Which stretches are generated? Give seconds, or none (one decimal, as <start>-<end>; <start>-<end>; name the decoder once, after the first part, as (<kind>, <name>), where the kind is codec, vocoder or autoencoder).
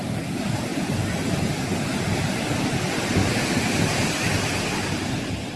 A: none